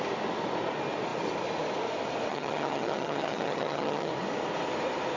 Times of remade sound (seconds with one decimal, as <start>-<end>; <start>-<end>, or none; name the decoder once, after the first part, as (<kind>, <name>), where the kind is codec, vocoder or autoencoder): 2.3-4.1 (vocoder, HiFi-GAN)